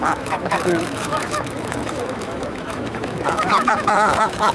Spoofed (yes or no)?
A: yes